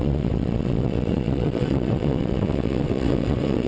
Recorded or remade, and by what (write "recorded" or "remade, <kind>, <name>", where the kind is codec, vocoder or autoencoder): remade, vocoder, WaveNeXt